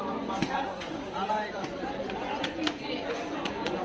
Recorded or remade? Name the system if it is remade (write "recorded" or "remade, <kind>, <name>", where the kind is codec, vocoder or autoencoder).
remade, vocoder, Vocos